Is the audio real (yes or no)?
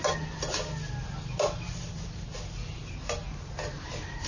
yes